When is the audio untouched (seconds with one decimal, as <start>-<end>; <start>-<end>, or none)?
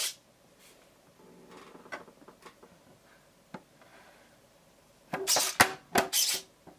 1.8-3.9; 5.4-6.8